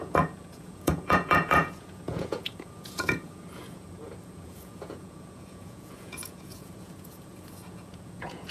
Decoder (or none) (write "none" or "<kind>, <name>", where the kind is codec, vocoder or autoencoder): vocoder, Vocos